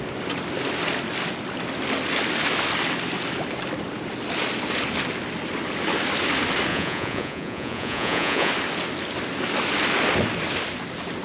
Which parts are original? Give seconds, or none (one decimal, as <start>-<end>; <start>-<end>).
0.0-6.7; 8.5-11.2

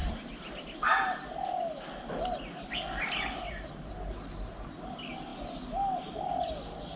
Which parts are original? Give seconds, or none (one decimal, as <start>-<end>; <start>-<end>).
0.0-7.0

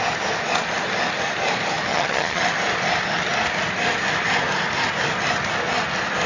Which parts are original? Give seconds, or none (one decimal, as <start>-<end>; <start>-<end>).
0.0-1.9; 2.4-6.3

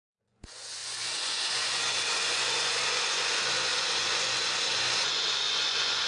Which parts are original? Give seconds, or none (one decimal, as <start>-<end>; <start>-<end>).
none

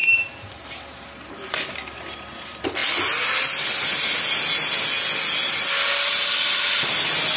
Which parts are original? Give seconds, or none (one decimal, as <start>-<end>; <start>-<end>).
2.8-7.4

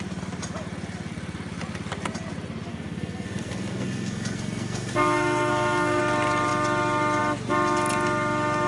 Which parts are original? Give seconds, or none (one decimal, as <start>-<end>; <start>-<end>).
0.0-2.7; 6.0-8.7

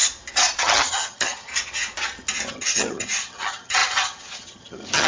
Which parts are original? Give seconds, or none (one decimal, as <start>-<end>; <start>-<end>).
0.0-0.6; 1.5-2.5

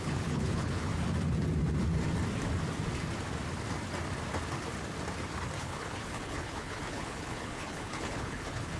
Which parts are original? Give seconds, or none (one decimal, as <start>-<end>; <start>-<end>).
0.9-5.6